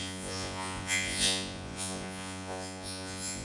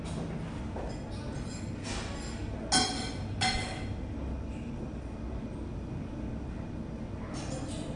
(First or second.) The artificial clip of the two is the first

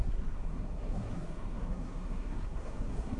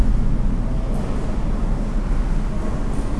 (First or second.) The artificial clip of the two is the first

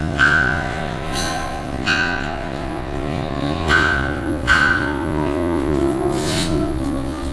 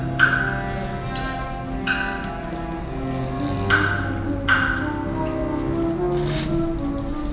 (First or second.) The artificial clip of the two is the first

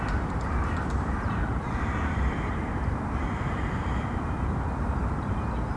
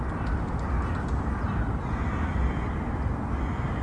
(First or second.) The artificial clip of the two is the first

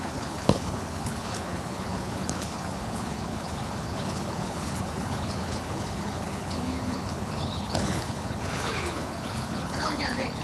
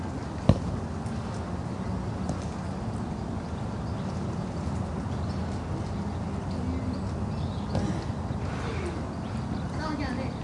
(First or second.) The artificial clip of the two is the first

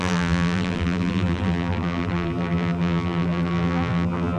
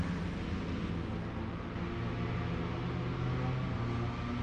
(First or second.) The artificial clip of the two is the first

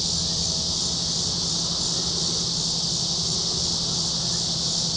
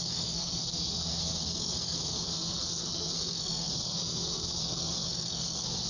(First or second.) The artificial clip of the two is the second